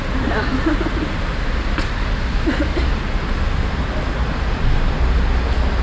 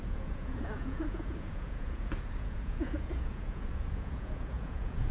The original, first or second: first